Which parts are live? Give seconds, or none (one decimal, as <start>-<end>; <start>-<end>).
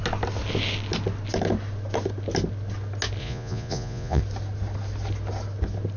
0.0-3.2; 4.2-6.0